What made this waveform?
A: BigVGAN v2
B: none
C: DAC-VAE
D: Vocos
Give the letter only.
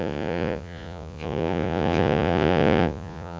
D